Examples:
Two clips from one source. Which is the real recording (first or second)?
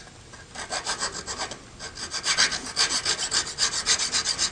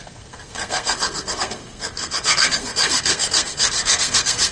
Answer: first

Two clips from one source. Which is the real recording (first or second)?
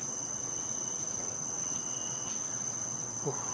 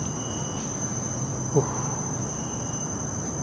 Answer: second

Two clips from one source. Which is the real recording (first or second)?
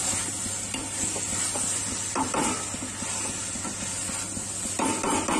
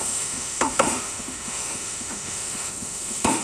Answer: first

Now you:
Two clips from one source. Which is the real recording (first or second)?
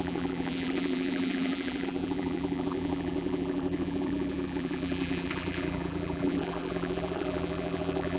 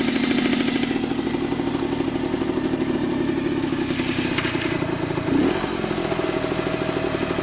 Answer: second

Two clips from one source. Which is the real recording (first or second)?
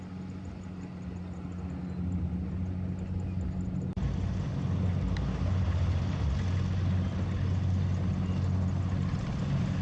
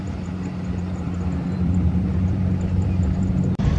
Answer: first